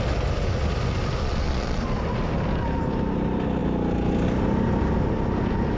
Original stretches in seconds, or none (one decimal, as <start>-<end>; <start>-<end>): 0.0-1.2; 1.8-5.8